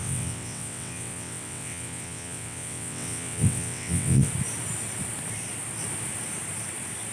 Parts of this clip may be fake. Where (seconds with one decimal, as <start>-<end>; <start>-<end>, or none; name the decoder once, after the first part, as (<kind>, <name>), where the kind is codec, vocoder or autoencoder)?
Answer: 0.0-4.3 (vocoder, WaveNeXt)